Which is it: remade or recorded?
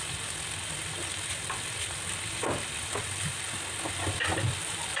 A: recorded